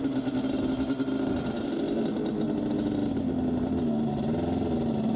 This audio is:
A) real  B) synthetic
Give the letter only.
A